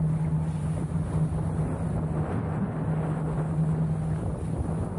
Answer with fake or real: real